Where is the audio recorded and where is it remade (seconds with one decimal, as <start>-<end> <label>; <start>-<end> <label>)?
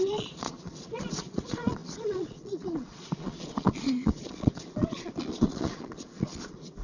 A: 0.0-6.8 remade